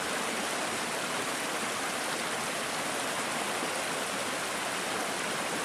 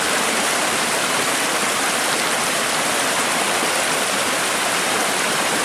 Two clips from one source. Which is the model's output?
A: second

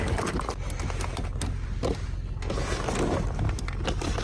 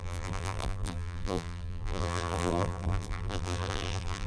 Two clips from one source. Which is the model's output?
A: second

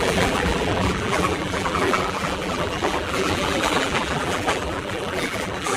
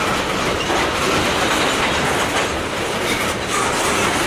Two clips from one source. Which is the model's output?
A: first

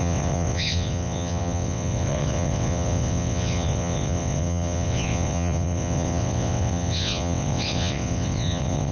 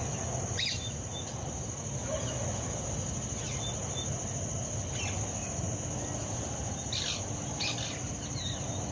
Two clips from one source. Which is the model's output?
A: first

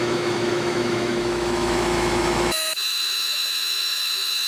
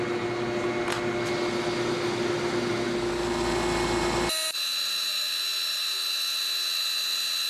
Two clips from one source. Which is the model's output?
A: first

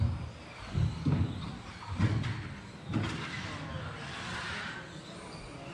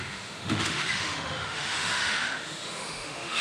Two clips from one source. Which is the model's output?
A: second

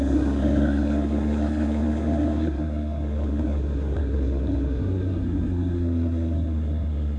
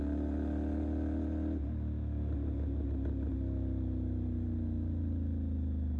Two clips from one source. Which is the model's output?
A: first